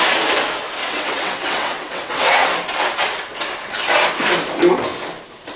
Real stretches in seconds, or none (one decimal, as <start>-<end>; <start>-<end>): 0.0-0.8; 2.5-5.6